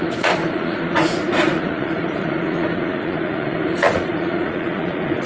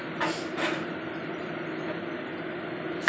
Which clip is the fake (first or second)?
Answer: first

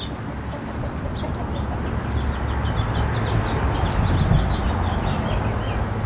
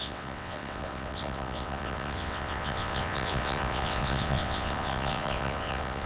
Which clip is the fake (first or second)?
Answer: second